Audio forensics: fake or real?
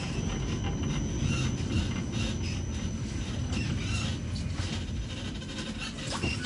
real